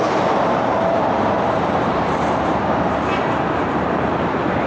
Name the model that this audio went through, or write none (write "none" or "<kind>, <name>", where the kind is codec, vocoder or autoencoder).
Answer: vocoder, BigVGAN v2